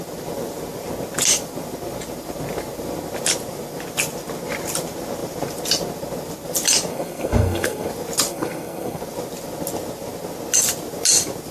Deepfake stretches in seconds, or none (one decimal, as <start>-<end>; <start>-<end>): 6.9-7.9; 8.3-9.0